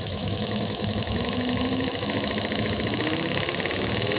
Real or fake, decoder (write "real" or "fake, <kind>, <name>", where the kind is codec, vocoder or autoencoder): fake, autoencoder, DAC-VAE